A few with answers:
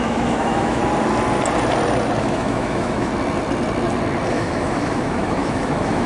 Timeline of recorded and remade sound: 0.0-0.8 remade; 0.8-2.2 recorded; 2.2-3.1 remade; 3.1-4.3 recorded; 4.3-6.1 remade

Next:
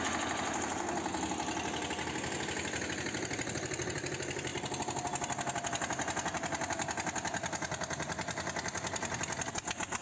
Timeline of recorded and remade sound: 0.0-10.0 recorded

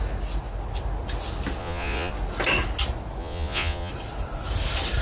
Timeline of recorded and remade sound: 0.0-1.6 recorded; 1.6-2.1 remade; 2.1-3.2 recorded; 3.2-3.9 remade; 3.9-5.0 recorded

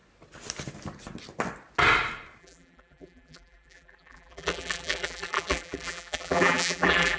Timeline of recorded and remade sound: 0.0-2.4 recorded; 2.4-7.2 remade

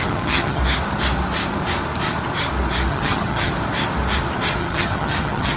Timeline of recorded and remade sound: 0.0-0.6 remade; 0.6-2.9 recorded; 2.9-3.5 remade; 3.5-4.6 recorded; 4.6-5.6 remade

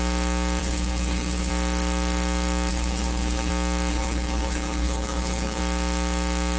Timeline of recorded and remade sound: 0.0-0.6 recorded; 0.6-1.5 remade; 1.5-2.7 recorded; 2.7-3.5 remade; 3.5-3.9 recorded; 3.9-5.6 remade; 5.6-6.6 recorded